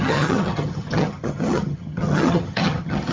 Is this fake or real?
fake